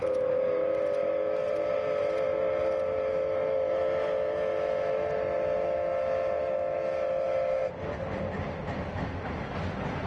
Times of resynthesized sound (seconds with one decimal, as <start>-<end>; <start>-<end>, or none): none